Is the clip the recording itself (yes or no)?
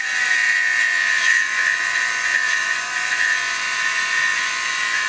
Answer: no